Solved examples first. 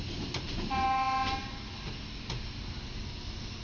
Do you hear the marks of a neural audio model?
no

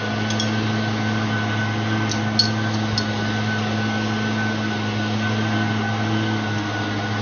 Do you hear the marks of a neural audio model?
no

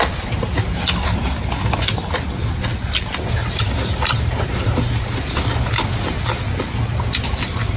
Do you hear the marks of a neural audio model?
no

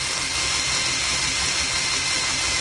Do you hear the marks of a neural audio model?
no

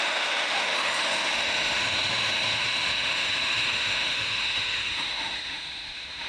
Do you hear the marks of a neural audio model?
yes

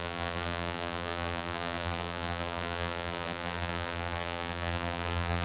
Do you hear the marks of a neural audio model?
yes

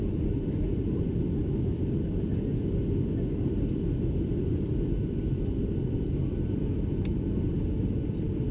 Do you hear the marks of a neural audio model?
yes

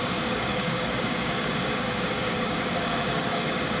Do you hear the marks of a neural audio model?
yes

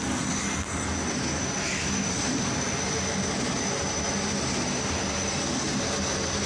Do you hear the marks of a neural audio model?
no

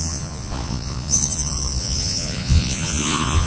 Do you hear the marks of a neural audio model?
yes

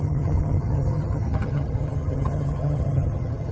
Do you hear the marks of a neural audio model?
yes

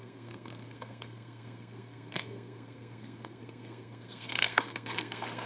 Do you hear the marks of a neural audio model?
yes